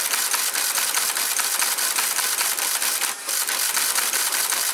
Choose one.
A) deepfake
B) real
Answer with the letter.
A